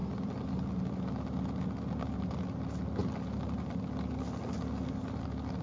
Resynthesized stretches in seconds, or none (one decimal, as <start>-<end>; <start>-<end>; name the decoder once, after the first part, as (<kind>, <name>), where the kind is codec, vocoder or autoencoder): none